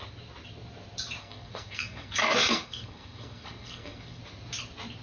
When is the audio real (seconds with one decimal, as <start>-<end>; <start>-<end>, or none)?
0.0-1.2; 4.2-5.0